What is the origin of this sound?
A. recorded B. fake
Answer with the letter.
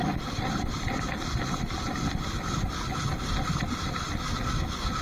A